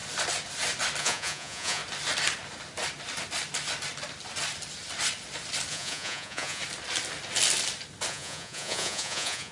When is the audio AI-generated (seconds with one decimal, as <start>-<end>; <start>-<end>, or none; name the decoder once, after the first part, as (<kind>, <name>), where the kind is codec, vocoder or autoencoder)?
1.0-1.8 (vocoder, Vocos); 5.7-6.6; 8.1-9.5